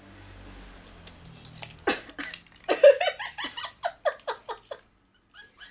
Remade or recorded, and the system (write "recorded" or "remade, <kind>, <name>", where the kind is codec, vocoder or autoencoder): recorded